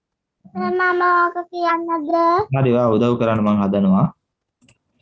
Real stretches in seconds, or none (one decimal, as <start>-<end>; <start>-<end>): 0.0-0.4; 1.7-5.0